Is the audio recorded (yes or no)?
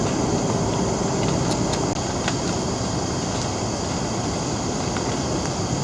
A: yes